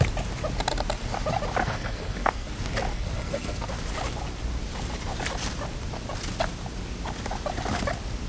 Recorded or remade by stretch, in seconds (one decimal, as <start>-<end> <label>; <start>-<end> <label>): 0.0-1.6 recorded; 1.6-2.5 remade; 2.5-2.9 recorded; 2.9-3.7 remade; 3.7-8.3 recorded